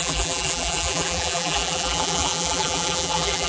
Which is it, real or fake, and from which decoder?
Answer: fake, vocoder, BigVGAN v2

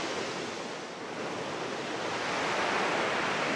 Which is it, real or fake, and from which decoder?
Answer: real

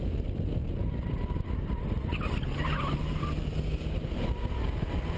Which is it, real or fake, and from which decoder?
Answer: real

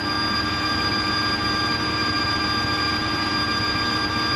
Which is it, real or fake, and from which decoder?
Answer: fake, vocoder, BigVGAN v2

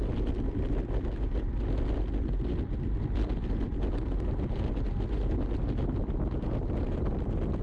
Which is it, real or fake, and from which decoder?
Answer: real